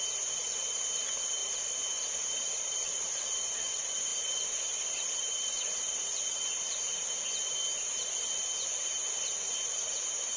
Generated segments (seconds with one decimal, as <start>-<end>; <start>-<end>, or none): 4.1-6.3